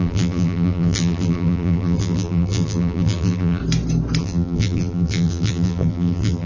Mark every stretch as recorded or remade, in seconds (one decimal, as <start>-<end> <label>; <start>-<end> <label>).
0.0-3.6 remade; 3.6-4.2 recorded; 4.2-6.5 remade